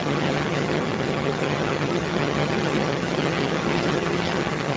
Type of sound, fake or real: fake